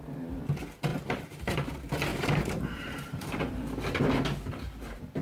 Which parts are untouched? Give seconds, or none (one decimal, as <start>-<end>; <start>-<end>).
0.0-0.9; 1.7-2.1; 3.5-5.2